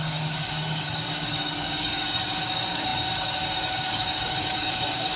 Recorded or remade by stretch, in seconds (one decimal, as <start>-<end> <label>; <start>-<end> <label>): 0.0-5.2 remade

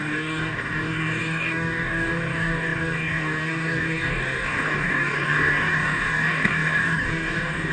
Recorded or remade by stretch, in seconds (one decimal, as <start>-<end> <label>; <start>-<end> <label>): 0.0-7.7 remade